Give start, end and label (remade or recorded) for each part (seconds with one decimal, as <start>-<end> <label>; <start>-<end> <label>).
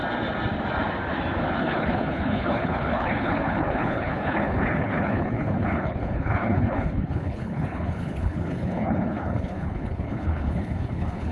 0.0-1.6 recorded; 1.6-11.3 remade